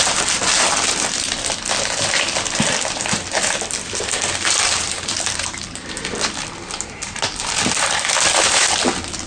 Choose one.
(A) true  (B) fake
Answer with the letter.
B